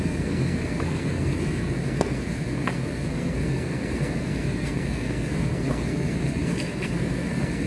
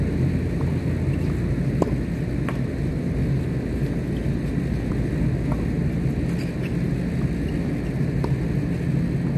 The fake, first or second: first